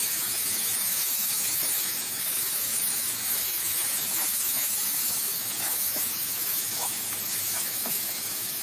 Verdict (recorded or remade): remade